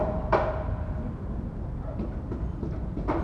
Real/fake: real